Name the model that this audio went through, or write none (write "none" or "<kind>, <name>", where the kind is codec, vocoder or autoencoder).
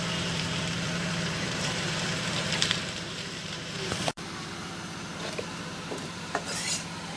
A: vocoder, BigVGAN v2